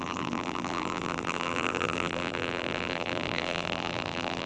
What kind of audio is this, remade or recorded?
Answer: remade